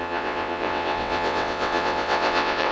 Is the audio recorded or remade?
remade